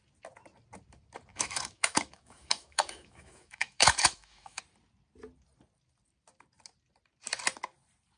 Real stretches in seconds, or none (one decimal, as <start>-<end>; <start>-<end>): 0.0-1.3; 4.6-8.2